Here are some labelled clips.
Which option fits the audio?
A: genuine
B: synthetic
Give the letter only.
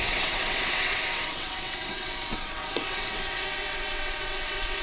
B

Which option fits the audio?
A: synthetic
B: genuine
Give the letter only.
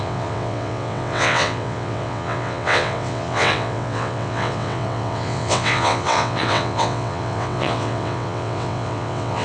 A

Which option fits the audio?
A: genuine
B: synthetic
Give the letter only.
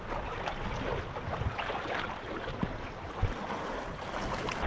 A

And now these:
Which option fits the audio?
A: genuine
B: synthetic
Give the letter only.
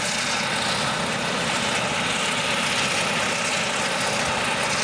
A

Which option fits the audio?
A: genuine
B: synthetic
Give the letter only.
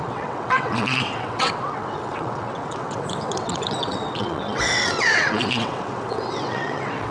B